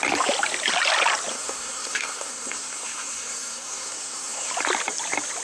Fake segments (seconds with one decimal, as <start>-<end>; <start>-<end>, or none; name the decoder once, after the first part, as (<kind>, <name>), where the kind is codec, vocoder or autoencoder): 1.3-4.5 (codec, SNAC)